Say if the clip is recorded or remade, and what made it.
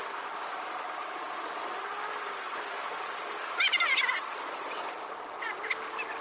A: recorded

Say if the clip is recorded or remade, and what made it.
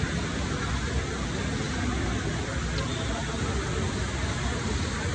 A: recorded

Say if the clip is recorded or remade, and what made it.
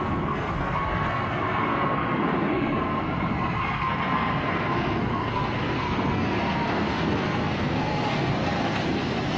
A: remade, codec, SNAC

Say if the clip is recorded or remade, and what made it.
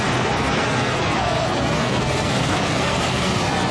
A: remade, codec, SNAC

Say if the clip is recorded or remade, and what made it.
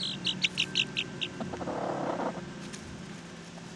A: recorded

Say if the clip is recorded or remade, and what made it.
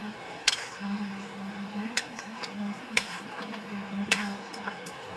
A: remade, codec, SNAC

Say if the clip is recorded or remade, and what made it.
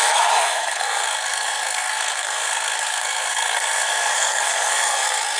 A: remade, codec, SNAC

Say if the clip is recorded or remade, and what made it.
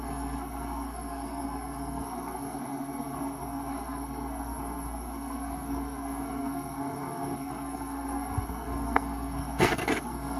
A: remade, codec, SNAC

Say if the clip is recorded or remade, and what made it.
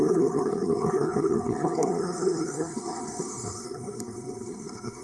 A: remade, codec, SNAC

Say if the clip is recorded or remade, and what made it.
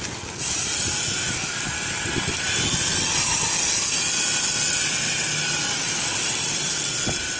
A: recorded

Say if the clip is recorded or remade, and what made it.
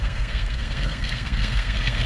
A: remade, codec, SNAC